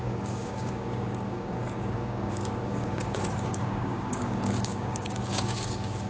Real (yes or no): no